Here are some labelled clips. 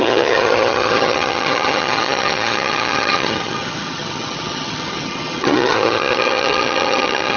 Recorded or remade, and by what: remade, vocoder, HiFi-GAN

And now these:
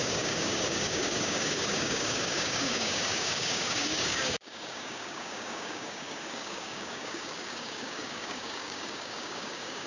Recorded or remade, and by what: remade, codec, DAC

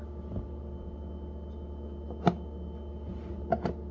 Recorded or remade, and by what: recorded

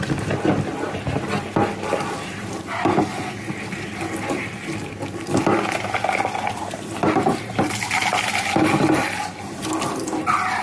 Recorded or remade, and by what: recorded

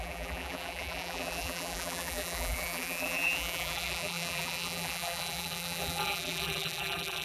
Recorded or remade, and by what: remade, vocoder, BigVGAN v2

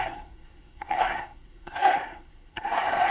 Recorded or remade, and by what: remade, codec, SNAC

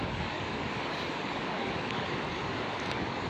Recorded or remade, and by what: remade, codec, DAC